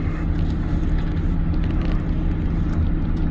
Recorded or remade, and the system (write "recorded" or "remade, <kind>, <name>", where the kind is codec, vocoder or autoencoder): recorded